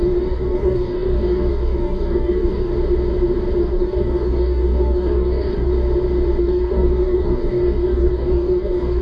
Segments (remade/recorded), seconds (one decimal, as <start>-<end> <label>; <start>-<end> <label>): 0.0-2.7 remade; 2.7-3.6 recorded; 3.6-5.7 remade; 5.7-6.4 recorded; 6.4-9.0 remade